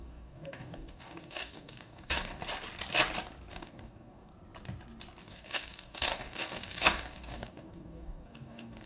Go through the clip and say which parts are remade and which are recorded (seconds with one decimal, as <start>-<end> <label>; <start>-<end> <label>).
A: 0.0-2.4 remade; 2.4-3.5 recorded; 3.5-4.3 remade; 4.3-5.2 recorded; 5.2-8.9 remade